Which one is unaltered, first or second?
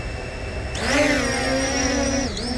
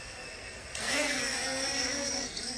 first